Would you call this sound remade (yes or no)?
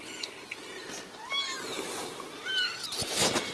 no